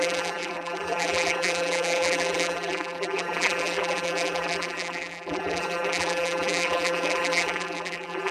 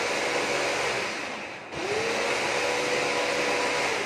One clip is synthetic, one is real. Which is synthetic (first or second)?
first